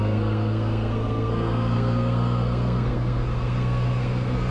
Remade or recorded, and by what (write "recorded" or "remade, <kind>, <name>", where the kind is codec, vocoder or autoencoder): remade, codec, SNAC